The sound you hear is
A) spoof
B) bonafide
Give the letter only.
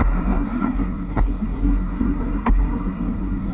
A